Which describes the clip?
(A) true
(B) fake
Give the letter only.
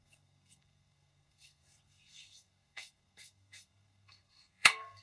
B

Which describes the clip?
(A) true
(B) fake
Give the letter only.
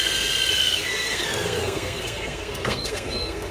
B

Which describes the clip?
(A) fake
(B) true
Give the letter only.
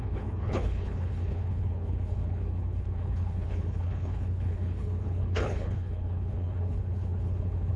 A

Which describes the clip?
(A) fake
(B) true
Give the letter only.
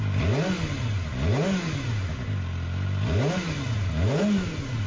B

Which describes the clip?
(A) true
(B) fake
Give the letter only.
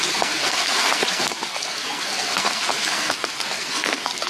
B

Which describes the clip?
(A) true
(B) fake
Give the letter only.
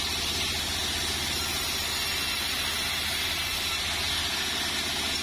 A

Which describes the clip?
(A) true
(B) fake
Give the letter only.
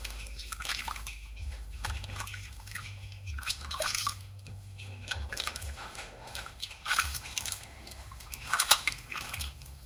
B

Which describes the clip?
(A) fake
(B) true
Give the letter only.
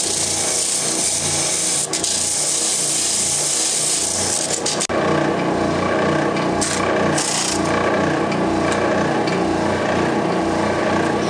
B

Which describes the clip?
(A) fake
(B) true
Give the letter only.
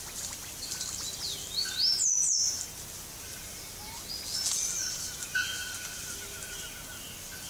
B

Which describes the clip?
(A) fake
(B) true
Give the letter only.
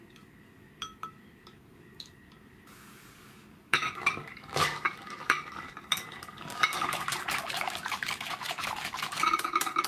A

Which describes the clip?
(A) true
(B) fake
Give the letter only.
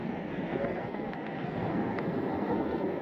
B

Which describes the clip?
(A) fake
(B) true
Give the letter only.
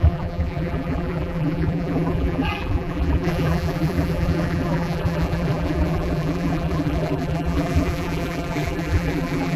A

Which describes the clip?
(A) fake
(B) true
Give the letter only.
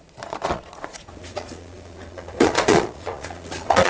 A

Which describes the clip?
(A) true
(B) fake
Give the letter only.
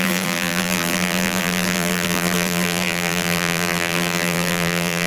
B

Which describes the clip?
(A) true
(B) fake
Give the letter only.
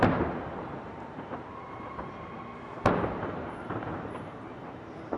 B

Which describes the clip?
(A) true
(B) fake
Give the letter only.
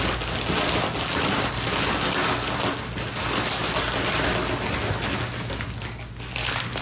A